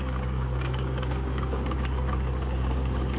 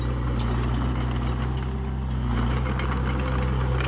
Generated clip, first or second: first